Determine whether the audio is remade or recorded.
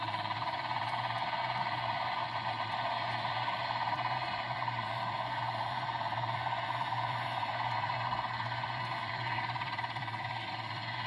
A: remade